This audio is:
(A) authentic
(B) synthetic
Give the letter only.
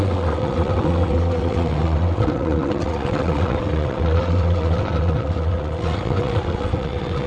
B